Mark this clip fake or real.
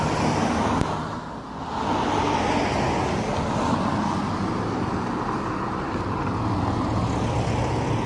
real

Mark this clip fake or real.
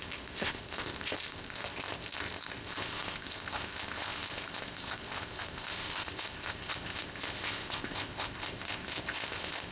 fake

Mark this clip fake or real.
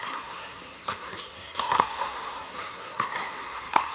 fake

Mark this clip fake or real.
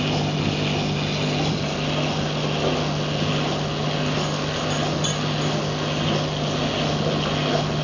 real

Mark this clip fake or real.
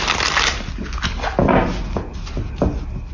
real